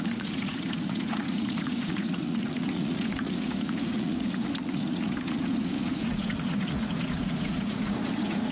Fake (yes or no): yes